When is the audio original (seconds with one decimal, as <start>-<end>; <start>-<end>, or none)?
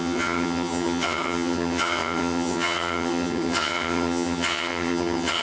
none